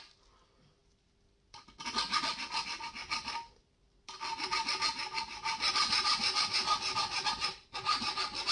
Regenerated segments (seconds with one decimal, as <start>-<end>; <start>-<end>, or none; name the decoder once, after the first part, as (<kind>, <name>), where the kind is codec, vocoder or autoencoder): none